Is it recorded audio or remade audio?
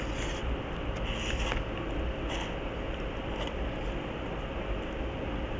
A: recorded